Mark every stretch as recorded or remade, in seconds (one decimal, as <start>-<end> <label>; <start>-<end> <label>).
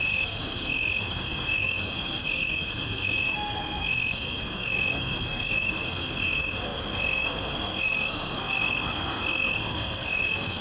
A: 0.0-10.6 remade